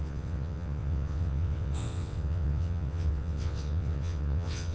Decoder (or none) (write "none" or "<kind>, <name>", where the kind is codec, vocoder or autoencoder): vocoder, WaveNeXt